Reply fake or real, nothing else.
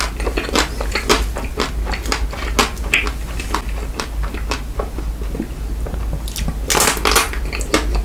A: real